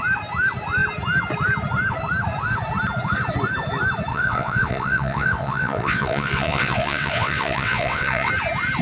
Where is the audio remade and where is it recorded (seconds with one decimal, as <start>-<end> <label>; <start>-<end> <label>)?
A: 0.0-4.1 recorded; 4.1-8.3 remade; 8.3-8.8 recorded